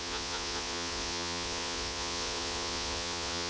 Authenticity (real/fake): fake